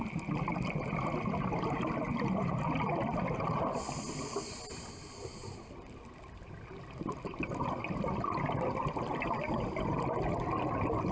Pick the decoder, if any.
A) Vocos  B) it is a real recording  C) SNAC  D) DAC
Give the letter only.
B